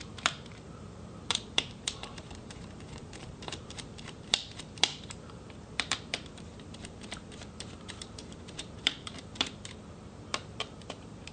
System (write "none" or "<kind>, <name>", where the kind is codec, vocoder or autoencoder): vocoder, BigVGAN v2